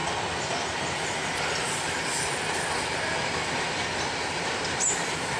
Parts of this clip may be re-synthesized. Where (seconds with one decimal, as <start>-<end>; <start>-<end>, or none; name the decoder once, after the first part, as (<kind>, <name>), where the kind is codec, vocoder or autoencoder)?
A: none